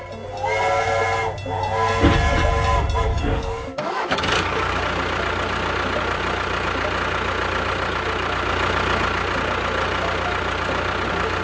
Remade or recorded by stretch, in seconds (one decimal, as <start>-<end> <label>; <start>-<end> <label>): 0.0-3.1 recorded; 3.1-4.8 remade; 4.8-11.4 recorded